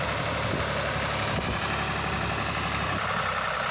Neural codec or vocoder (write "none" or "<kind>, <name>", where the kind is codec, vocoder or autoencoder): none